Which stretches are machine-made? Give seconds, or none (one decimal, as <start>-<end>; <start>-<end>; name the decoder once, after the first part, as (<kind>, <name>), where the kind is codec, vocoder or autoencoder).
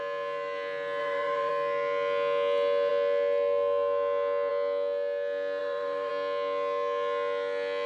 1.0-1.5 (vocoder, BigVGAN v2); 5.6-6.1